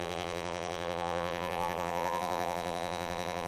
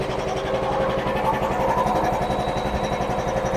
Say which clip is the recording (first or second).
second